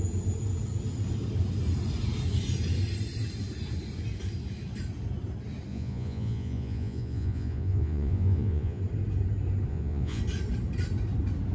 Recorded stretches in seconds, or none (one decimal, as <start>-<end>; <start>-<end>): 0.0-5.7; 8.8-9.7; 10.2-11.5